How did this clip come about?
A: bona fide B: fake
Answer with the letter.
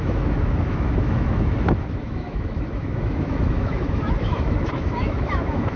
B